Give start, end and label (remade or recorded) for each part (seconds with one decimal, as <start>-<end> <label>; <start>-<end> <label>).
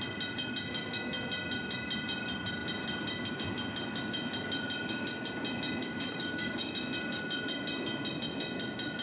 0.0-5.8 recorded; 5.8-6.7 remade; 6.7-9.0 recorded